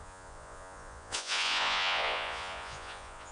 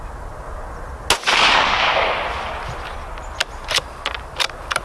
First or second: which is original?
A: second